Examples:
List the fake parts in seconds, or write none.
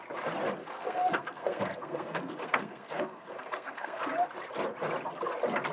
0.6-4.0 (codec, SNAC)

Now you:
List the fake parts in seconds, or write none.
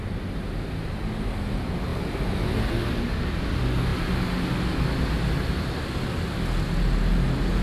none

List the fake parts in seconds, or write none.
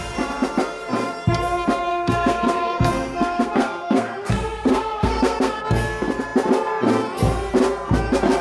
1.9-5.6 (codec, SNAC)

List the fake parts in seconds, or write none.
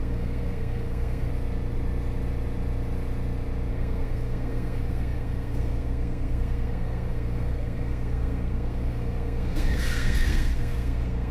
0.0-1.3 (codec, SNAC); 3.7-11.3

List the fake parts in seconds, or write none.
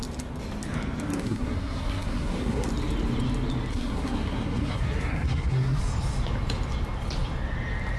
1.1-2.7 (codec, SNAC); 3.7-5.8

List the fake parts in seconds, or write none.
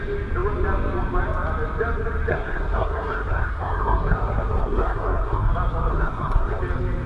2.3-5.5 (codec, SNAC); 5.9-6.6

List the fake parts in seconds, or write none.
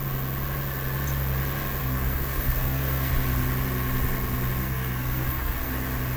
1.8-3.1 (codec, SNAC); 4.6-5.7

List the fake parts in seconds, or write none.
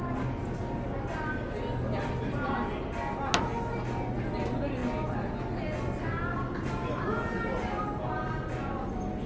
none